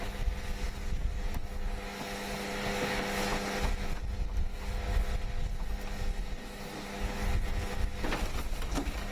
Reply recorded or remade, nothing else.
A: recorded